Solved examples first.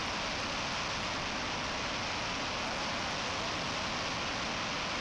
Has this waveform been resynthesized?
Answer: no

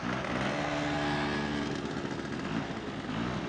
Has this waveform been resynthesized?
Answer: no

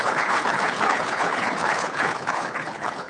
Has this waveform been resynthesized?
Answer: yes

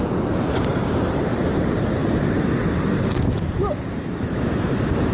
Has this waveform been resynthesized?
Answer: no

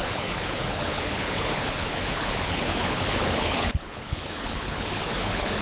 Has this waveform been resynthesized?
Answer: yes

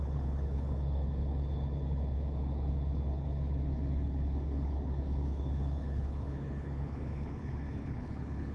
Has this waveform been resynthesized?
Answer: yes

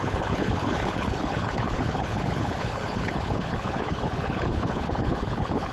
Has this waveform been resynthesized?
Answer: yes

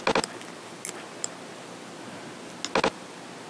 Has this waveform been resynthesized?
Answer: no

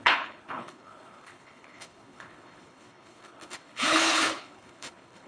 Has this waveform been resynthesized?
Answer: yes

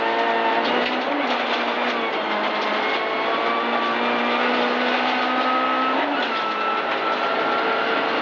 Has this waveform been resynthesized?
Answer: no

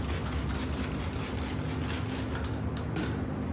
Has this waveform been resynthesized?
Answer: no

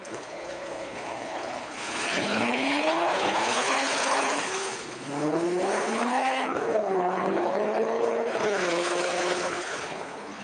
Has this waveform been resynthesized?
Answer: yes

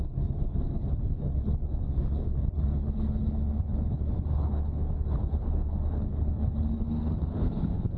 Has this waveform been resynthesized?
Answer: yes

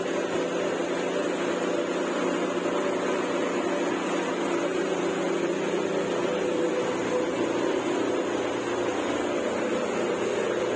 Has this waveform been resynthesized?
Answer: no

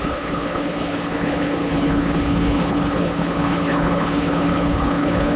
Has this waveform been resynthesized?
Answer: yes